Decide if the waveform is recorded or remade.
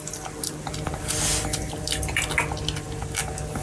recorded